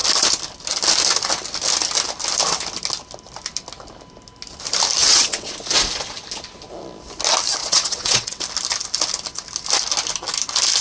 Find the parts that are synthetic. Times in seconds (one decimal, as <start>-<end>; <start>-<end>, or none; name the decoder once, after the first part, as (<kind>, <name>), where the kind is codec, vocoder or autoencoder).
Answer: 5.0-5.5 (vocoder, WaveNeXt); 7.6-8.4